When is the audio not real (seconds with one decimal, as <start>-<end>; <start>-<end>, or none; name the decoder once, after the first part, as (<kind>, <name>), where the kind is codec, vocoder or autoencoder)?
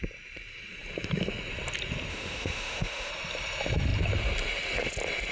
2.1-3.1 (autoencoder, DAC-VAE)